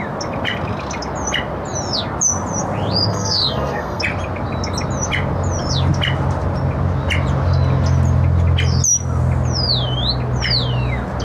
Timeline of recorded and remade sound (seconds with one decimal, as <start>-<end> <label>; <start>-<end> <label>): 0.0-3.1 recorded; 3.1-4.0 remade; 4.0-11.2 recorded